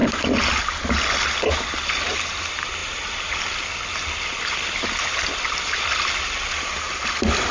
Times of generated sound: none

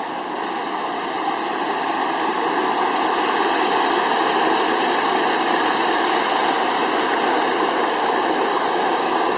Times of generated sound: 8.5-9.4 (codec, DAC)

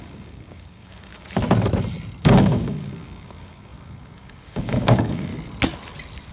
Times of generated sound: 0.0-1.1 (codec, DAC); 2.2-5.3